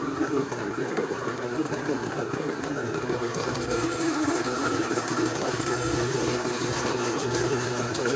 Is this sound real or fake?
fake